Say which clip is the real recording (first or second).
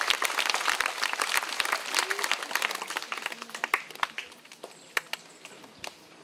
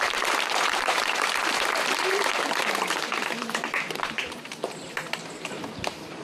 first